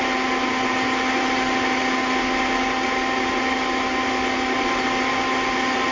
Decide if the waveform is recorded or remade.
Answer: recorded